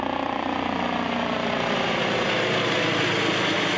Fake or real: real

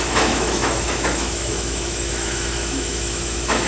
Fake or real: fake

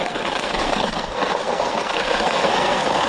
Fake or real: fake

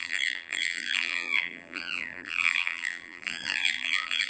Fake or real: fake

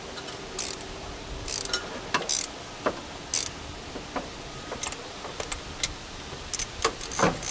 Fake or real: real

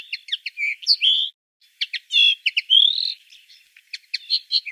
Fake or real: real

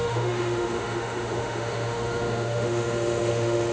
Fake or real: fake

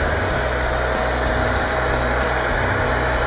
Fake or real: real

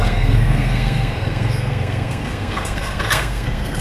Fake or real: fake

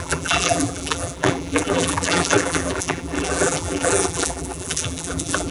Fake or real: fake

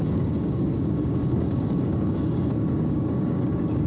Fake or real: fake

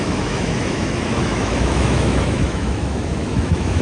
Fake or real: fake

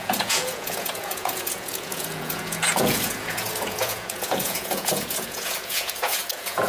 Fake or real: fake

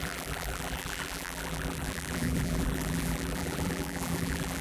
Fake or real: fake